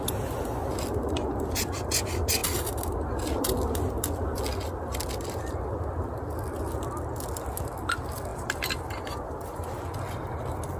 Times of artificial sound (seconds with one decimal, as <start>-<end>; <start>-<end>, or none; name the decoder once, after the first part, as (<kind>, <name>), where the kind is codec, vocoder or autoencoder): 8.3-9.8 (vocoder, BigVGAN v2)